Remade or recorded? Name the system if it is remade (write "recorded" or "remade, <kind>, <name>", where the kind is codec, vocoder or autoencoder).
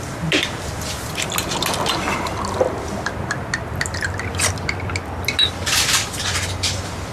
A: recorded